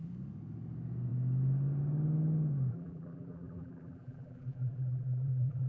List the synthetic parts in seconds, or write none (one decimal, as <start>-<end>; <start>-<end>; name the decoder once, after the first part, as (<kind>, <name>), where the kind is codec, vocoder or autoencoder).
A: 2.7-5.7 (vocoder, BigVGAN v2)